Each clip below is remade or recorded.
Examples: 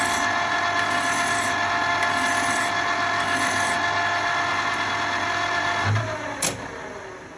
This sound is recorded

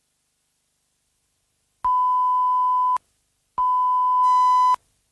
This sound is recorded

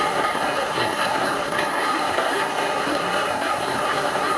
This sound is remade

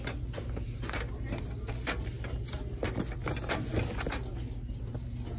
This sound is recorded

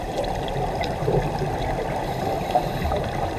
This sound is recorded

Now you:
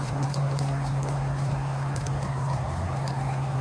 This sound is remade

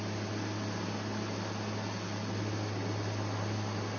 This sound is recorded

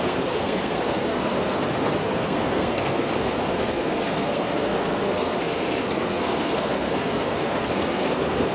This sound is remade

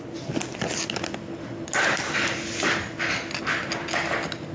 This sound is recorded